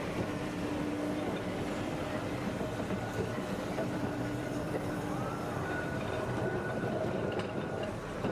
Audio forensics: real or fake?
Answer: fake